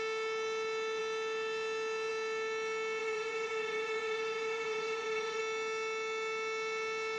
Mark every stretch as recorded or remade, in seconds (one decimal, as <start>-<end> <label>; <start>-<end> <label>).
0.0-3.0 recorded; 3.0-5.4 remade; 5.4-7.2 recorded